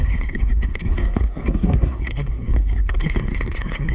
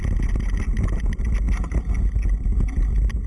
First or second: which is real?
second